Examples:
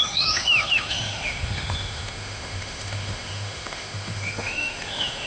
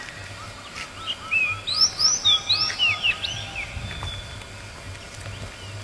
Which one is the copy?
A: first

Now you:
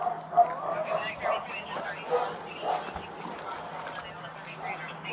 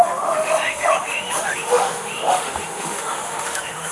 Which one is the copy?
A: second